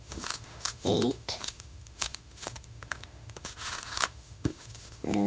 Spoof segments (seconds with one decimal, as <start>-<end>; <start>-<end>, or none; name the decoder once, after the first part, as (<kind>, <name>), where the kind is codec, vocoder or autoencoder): 0.0-5.3 (autoencoder, DAC-VAE)